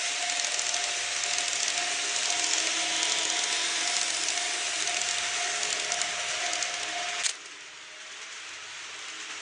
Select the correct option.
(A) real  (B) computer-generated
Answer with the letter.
A